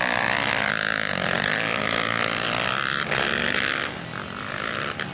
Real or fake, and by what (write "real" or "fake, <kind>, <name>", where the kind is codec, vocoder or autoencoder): real